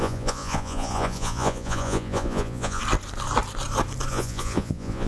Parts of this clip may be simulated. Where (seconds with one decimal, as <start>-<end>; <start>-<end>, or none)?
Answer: 0.0-2.8; 4.1-5.1